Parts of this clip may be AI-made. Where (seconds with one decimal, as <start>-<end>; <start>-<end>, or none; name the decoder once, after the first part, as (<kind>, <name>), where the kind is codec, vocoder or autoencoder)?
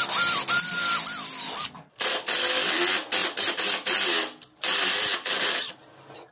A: none